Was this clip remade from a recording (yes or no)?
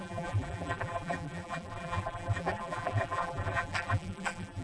yes